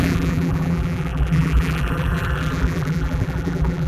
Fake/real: fake